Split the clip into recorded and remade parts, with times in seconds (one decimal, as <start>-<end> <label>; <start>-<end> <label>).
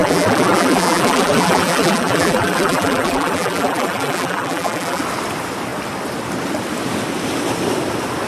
0.0-5.0 remade; 5.0-8.3 recorded